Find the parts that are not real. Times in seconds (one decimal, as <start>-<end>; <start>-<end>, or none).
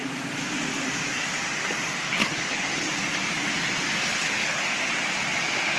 2.2-2.9; 4.1-4.6